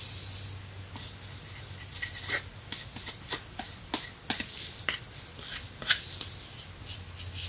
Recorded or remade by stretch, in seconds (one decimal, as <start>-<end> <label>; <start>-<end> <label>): 0.0-7.5 recorded